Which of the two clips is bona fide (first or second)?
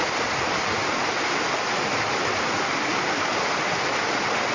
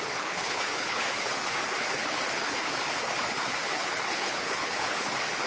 first